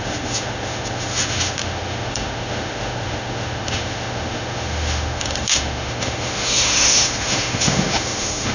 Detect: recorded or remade remade